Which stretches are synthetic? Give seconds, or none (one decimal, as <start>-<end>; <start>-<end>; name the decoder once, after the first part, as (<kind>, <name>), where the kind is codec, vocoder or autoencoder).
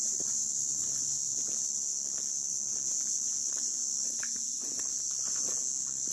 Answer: none